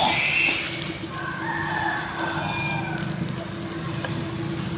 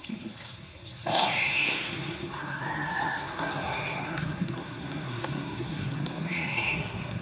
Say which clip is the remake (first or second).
second